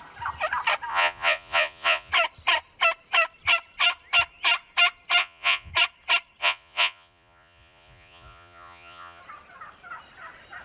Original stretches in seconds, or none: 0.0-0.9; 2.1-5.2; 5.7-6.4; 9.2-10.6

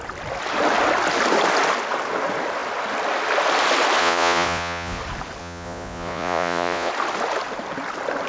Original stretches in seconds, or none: 0.0-4.0; 5.0-5.4; 6.9-8.3

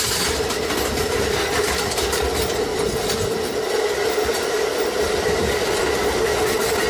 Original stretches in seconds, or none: 0.0-6.9

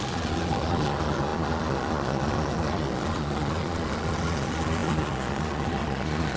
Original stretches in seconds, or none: none

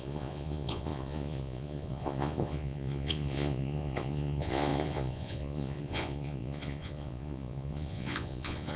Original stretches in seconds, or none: none

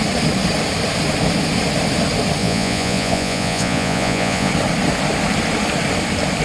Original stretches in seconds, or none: 0.0-2.4; 4.5-6.4

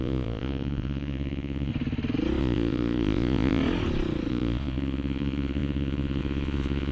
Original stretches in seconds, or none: 1.7-2.4; 3.6-4.3